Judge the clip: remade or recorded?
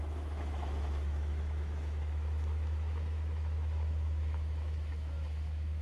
remade